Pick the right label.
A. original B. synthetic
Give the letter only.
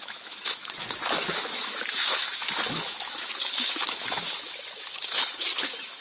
B